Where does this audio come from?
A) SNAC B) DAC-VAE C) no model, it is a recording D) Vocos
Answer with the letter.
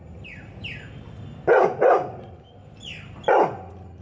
C